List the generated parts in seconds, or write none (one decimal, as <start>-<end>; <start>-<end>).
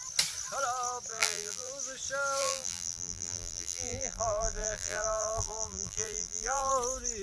1.1-1.7; 2.4-6.7